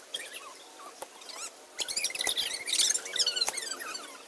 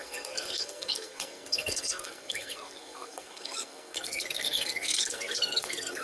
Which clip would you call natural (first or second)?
first